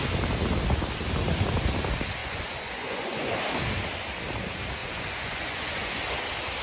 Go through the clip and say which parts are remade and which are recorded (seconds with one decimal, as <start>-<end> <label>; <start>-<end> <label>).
0.0-2.2 recorded; 2.2-3.3 remade; 3.3-4.8 recorded; 4.8-5.9 remade; 5.9-6.6 recorded